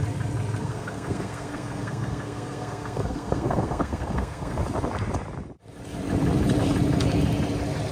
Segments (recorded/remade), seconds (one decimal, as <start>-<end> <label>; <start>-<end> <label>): 0.0-0.6 recorded; 0.6-4.6 remade; 4.6-7.9 recorded